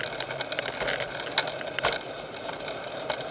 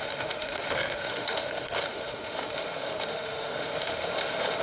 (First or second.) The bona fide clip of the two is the first